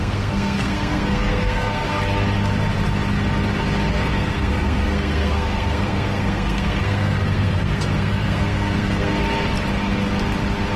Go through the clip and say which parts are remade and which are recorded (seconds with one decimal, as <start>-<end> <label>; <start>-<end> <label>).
0.0-2.0 remade; 2.0-3.9 recorded; 3.9-9.2 remade; 9.2-10.8 recorded